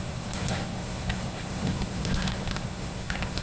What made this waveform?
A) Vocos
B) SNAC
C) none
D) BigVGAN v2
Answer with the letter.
B